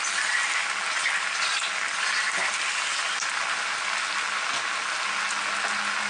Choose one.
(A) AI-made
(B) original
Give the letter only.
B